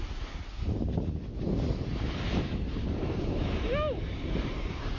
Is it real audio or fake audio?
real